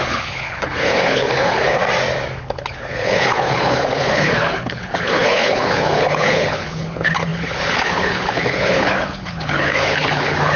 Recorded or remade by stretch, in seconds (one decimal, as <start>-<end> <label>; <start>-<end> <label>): 0.0-1.8 remade; 1.8-2.4 recorded; 2.4-10.6 remade